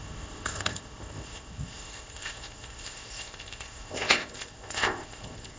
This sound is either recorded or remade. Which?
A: remade